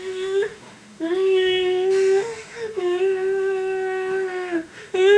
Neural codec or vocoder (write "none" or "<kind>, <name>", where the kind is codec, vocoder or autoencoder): autoencoder, DAC-VAE